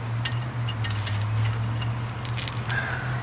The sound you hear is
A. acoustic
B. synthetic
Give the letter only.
A